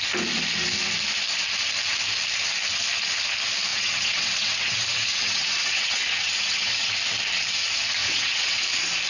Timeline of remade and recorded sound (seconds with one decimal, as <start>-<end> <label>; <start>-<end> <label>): 0.0-3.7 recorded; 3.7-6.9 remade; 6.9-8.0 recorded; 8.0-8.6 remade; 8.6-9.1 recorded